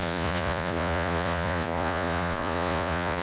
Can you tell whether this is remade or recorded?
remade